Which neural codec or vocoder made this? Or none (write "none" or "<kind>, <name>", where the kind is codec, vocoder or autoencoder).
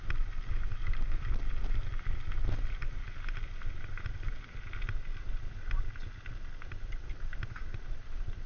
none